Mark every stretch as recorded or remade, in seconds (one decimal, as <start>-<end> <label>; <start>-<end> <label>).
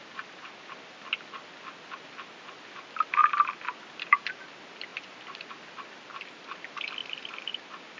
0.0-4.9 recorded; 4.9-5.5 remade; 5.5-7.0 recorded; 7.0-7.5 remade; 7.5-8.0 recorded